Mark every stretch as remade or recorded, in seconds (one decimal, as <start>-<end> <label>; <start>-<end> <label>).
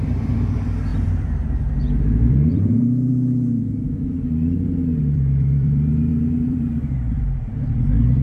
0.0-3.1 remade; 3.1-5.0 recorded; 5.0-8.2 remade